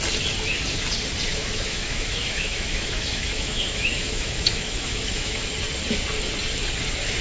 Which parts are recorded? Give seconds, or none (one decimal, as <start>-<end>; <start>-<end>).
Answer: 0.0-1.3; 5.4-7.2